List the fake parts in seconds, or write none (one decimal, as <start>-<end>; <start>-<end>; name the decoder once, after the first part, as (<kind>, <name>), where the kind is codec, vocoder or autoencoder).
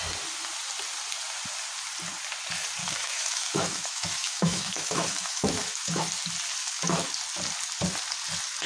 2.8-6.0 (autoencoder, DAC-VAE); 6.6-7.1